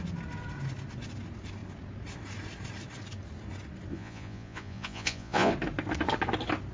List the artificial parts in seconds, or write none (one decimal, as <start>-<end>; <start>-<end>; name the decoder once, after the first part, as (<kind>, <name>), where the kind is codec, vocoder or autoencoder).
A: 3.9-5.5 (vocoder, Vocos)